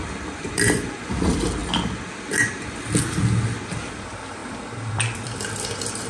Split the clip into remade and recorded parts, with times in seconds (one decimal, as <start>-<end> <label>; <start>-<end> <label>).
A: 0.0-1.6 remade; 1.6-3.6 recorded; 3.6-6.1 remade